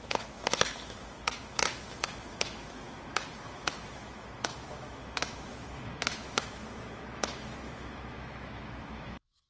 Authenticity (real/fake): fake